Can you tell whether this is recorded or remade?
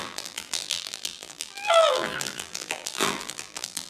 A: remade